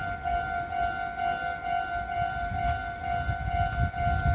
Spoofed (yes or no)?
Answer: no